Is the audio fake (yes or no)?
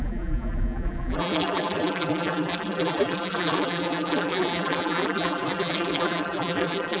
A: yes